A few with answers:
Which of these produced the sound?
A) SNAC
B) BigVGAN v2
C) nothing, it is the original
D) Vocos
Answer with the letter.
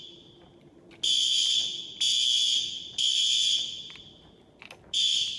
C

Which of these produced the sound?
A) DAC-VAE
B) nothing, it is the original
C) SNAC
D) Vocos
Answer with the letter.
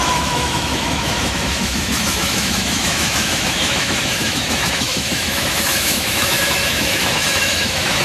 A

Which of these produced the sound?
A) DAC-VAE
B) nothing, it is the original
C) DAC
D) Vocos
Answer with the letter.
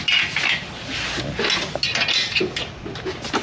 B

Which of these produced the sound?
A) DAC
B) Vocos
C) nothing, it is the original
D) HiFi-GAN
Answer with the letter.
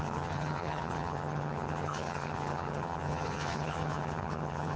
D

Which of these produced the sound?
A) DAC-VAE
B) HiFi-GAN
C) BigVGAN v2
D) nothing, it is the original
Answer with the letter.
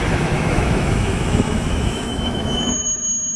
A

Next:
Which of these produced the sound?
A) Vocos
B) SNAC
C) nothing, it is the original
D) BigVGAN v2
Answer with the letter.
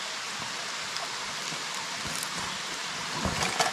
C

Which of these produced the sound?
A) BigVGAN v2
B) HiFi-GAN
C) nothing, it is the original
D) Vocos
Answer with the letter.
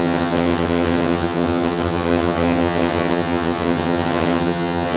B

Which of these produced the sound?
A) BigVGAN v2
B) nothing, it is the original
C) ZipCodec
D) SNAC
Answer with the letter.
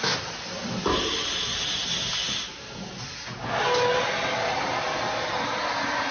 B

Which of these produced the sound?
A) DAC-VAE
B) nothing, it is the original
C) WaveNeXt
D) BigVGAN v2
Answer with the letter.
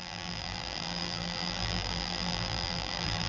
D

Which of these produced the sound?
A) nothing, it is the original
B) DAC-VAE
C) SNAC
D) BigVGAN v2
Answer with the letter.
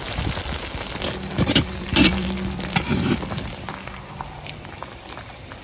D